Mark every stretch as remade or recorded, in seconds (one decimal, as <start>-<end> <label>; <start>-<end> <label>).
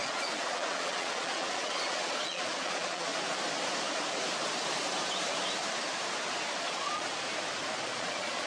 0.0-3.1 remade; 3.1-6.6 recorded; 6.6-7.1 remade; 7.1-7.8 recorded; 7.8-8.5 remade